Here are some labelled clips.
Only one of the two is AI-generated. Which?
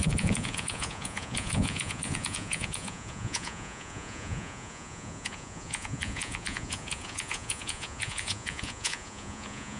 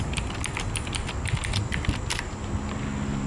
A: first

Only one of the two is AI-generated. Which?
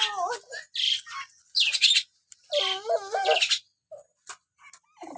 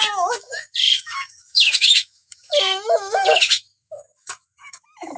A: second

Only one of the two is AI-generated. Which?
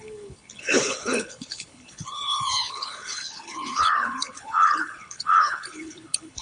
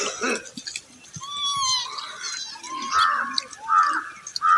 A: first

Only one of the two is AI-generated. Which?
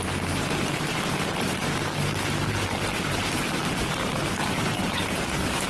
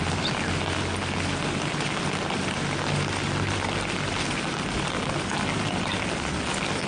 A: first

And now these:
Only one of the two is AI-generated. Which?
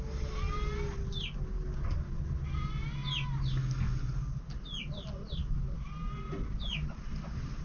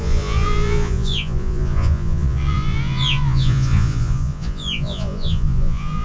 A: second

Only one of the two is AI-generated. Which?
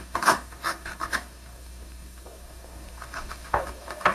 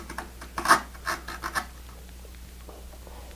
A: first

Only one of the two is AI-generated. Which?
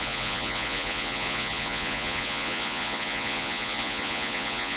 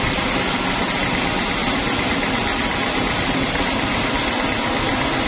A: first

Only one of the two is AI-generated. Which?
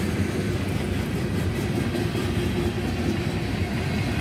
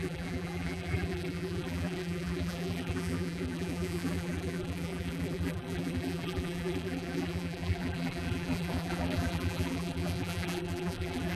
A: second